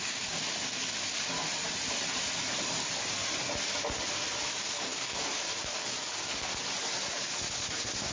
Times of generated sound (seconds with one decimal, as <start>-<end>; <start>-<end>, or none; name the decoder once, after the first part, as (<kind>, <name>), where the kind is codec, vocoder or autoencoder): 0.0-1.1 (codec, DAC); 4.5-6.5; 7.1-8.1